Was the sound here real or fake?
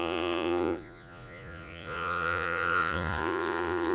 fake